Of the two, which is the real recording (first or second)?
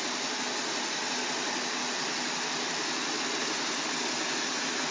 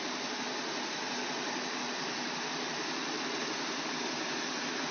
first